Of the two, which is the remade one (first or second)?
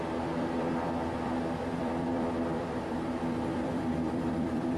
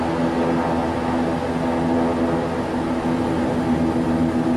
first